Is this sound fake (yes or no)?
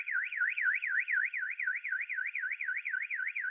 yes